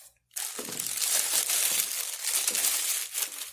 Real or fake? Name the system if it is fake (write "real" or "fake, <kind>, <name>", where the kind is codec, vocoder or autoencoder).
real